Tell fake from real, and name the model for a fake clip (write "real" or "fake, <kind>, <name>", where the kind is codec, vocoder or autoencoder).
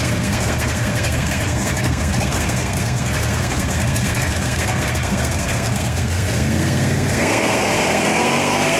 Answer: fake, codec, SNAC